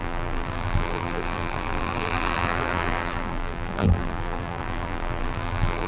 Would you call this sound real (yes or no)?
no